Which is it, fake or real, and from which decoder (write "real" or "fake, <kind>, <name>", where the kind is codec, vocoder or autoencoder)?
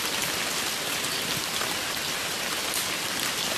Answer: real